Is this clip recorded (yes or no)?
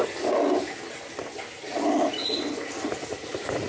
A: yes